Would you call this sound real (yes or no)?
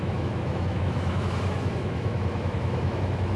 no